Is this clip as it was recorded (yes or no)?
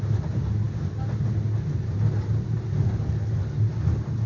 yes